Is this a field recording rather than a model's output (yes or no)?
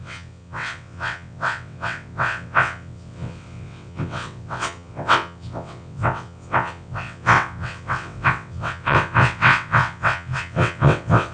no